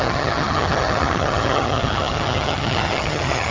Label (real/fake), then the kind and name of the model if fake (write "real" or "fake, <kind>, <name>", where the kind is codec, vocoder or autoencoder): fake, vocoder, HiFi-GAN